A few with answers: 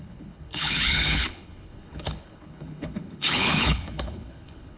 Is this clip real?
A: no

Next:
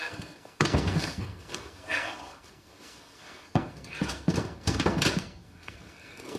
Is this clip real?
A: no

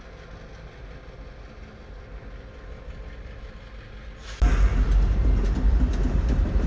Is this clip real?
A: yes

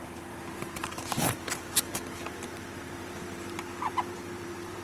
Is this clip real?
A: no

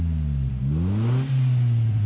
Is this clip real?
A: yes